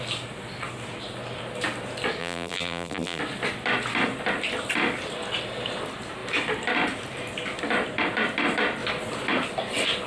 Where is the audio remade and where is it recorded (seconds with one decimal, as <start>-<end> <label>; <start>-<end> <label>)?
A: 0.0-2.2 recorded; 2.2-3.2 remade; 3.2-10.1 recorded